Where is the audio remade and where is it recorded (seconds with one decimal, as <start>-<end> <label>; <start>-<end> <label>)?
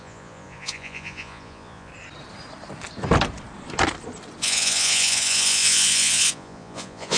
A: 0.0-1.9 remade; 1.9-4.4 recorded; 4.4-7.2 remade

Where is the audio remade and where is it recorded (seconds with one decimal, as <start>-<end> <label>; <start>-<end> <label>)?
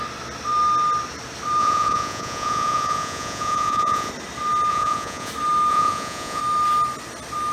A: 0.0-1.6 recorded; 1.6-4.1 remade; 4.1-4.7 recorded; 4.7-5.3 remade; 5.3-5.7 recorded; 5.7-6.4 remade; 6.4-7.5 recorded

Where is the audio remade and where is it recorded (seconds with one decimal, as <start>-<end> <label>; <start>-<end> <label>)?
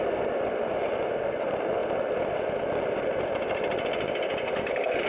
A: 0.0-5.1 recorded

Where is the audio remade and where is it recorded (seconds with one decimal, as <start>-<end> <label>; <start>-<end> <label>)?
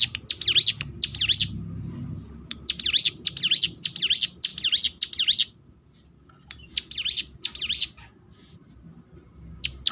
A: 0.0-9.9 recorded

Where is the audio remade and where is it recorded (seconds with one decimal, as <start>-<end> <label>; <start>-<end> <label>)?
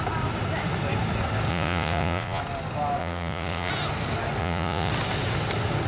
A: 0.0-1.5 recorded; 1.5-2.4 remade; 2.4-3.0 recorded; 3.0-3.7 remade; 3.7-4.4 recorded; 4.4-4.9 remade; 4.9-5.9 recorded